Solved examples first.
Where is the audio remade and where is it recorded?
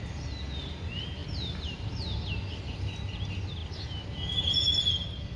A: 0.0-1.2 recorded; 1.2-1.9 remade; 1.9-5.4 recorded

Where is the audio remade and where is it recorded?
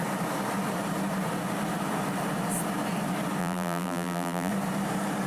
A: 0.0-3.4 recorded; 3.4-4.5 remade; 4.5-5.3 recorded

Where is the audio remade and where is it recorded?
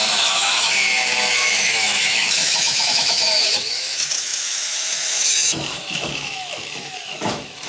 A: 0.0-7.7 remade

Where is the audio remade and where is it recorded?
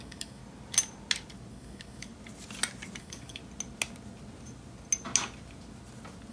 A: 0.0-0.4 remade; 0.4-1.5 recorded; 1.5-2.1 remade; 2.1-3.0 recorded; 3.0-3.4 remade; 3.4-6.3 recorded